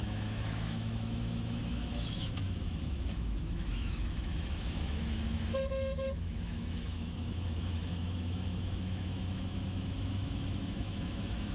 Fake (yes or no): yes